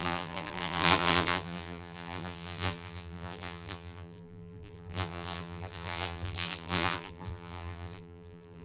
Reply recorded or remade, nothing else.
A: remade